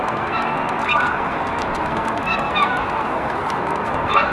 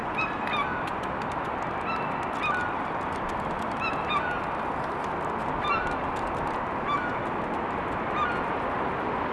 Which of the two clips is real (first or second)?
second